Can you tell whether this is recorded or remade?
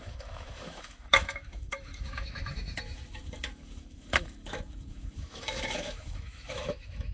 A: remade